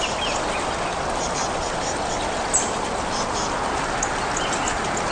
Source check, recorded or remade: recorded